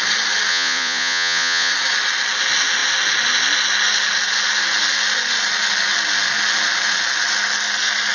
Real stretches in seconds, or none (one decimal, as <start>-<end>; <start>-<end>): 0.0-0.5; 1.7-8.1